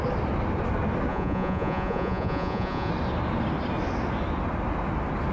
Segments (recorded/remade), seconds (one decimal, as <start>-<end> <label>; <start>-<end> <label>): 0.0-1.1 recorded; 1.1-2.9 remade; 2.9-5.3 recorded